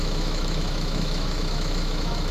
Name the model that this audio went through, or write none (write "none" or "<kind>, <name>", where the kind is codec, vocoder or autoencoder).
autoencoder, DAC-VAE